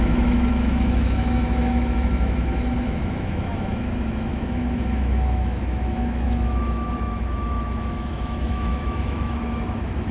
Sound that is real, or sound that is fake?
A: fake